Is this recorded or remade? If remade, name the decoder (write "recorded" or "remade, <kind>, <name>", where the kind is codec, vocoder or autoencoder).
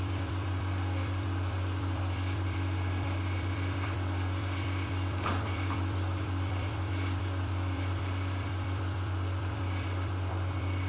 remade, vocoder, BigVGAN v2